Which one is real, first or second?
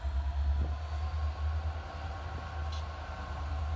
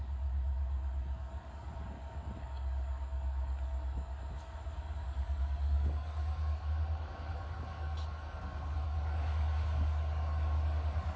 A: first